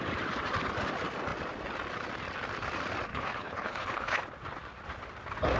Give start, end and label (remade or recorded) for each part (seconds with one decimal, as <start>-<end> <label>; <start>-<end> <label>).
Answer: 0.0-3.1 recorded; 3.1-4.2 remade; 4.2-5.6 recorded

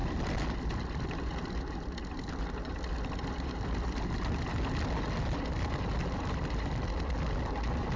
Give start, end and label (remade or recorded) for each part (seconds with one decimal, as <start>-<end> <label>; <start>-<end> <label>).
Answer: 0.0-8.0 recorded

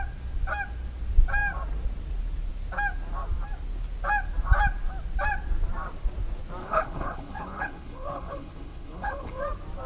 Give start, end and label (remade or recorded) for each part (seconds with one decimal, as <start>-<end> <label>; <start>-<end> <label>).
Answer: 0.0-6.6 recorded; 6.6-9.4 remade; 9.4-9.9 recorded